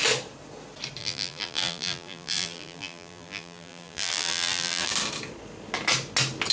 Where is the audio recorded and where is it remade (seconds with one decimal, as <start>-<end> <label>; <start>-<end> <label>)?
0.0-1.0 recorded; 1.0-4.9 remade; 4.9-6.5 recorded